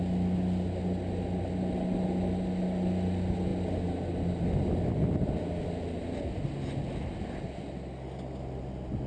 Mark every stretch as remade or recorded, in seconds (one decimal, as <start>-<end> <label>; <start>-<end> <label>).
0.0-9.1 recorded